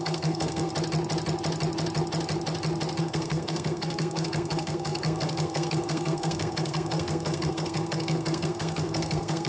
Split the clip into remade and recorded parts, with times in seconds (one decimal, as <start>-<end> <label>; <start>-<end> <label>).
0.0-0.7 remade; 0.7-3.0 recorded; 3.0-9.5 remade